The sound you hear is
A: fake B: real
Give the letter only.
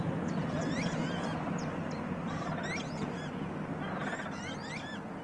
B